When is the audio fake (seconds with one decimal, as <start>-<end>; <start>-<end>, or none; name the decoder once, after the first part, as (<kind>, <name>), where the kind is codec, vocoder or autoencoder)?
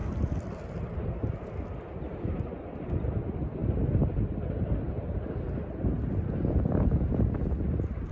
none